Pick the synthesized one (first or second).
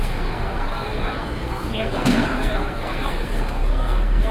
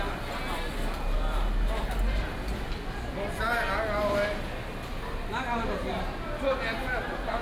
first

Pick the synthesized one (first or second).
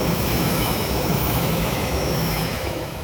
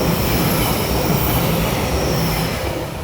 first